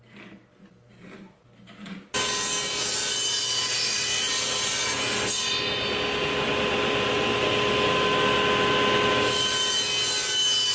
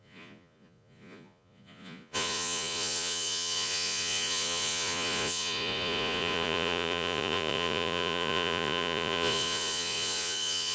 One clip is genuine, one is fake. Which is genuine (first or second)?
first